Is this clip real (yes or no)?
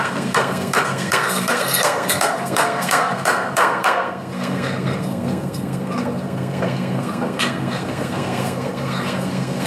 no